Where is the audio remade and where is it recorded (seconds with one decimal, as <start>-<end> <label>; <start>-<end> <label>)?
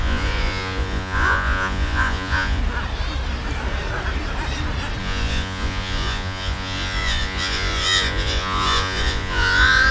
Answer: 0.0-2.6 remade; 2.6-5.0 recorded; 5.0-9.9 remade